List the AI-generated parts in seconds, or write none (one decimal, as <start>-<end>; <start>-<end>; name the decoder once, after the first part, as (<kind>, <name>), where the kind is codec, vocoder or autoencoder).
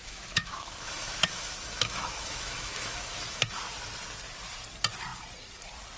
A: 0.0-3.6 (autoencoder, DAC-VAE)